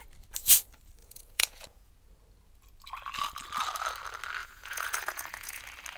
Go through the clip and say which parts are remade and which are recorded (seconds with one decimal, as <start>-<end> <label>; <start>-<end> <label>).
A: 0.0-1.0 recorded; 1.0-1.9 remade; 1.9-4.4 recorded; 4.4-5.6 remade; 5.6-6.0 recorded